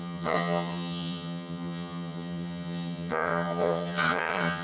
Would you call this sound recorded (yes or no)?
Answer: no